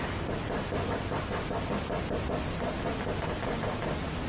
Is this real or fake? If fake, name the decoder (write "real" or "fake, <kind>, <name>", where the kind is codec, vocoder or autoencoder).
real